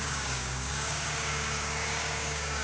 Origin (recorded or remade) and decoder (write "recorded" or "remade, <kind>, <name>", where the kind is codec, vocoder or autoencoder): remade, codec, DAC